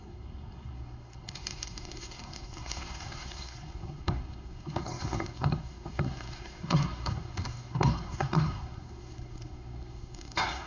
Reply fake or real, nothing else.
fake